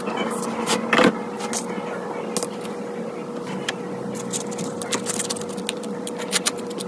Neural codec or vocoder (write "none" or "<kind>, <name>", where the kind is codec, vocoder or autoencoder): none